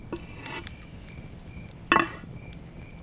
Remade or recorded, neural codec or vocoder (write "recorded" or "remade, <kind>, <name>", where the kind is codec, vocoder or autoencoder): recorded